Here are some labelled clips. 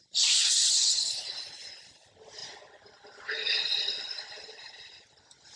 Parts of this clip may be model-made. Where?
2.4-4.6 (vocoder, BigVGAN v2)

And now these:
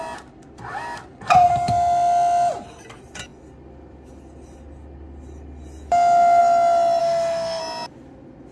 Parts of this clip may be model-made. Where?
7.0-7.6 (autoencoder, DAC-VAE)

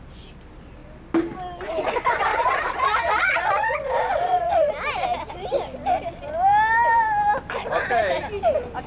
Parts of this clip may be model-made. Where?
2.3-4.7 (vocoder, Vocos)

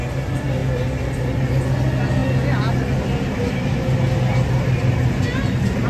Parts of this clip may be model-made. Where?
none

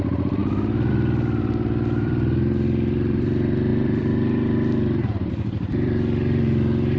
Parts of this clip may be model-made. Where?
0.0-0.4 (vocoder, BigVGAN v2); 0.9-7.0

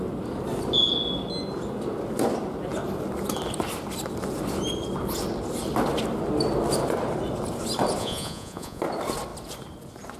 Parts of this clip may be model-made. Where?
8.0-8.8 (vocoder, Vocos)

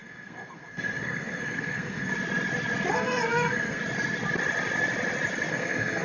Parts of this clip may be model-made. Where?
0.0-2.1 (codec, SNAC); 2.9-3.8; 5.5-6.0

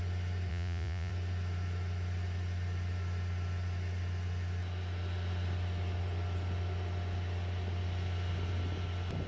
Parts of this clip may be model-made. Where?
0.5-1.1 (vocoder, Vocos)